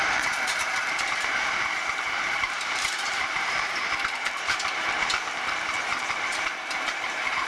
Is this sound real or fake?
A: fake